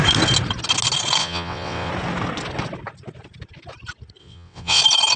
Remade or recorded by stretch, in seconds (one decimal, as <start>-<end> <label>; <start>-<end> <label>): 0.0-1.2 recorded; 1.2-1.9 remade; 1.9-4.2 recorded; 4.2-4.8 remade; 4.8-5.2 recorded